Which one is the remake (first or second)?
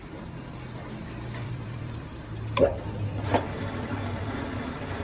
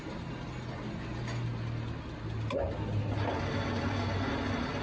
first